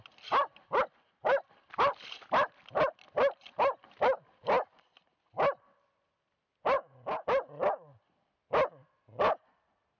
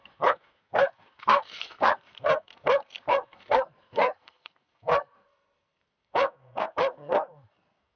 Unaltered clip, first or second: first